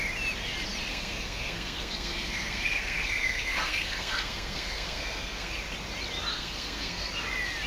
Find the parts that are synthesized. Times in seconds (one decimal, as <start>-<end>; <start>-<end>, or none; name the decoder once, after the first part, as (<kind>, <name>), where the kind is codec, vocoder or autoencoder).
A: 0.9-5.5 (codec, SNAC); 6.3-7.1